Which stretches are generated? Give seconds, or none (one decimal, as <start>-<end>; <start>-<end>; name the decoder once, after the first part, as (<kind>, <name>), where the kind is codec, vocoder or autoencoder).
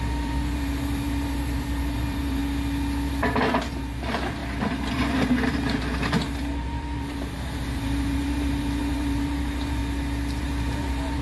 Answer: 0.0-2.4 (vocoder, BigVGAN v2); 3.1-9.8; 10.4-11.2